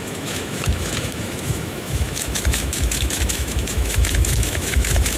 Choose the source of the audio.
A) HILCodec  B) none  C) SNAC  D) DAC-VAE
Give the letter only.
D